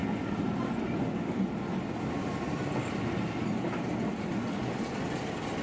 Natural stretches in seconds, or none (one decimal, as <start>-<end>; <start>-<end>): 0.0-5.6